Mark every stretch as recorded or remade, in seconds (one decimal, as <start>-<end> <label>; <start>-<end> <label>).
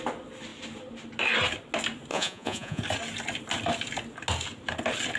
0.0-2.1 recorded; 2.1-2.8 remade; 2.8-5.2 recorded